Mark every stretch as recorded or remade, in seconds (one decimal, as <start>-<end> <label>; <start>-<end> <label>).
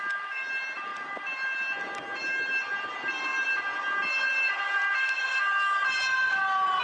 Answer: 0.0-6.8 recorded